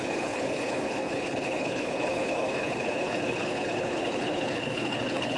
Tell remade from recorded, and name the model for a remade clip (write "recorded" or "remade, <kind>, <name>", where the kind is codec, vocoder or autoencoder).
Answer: remade, codec, HILCodec